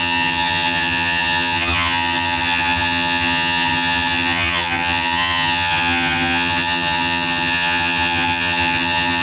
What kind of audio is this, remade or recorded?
remade